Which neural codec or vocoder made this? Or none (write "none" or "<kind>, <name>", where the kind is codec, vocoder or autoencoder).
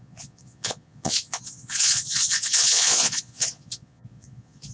vocoder, Vocos